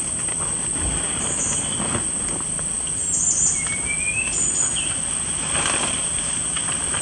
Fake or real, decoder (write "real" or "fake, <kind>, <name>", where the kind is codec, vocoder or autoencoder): real